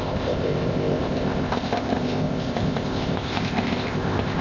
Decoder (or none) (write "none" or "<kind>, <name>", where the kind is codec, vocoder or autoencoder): codec, ZipCodec